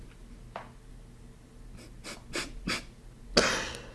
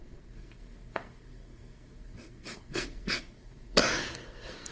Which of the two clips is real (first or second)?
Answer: first